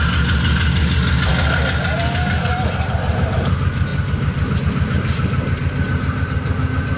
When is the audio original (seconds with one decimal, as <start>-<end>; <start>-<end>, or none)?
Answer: 0.0-7.0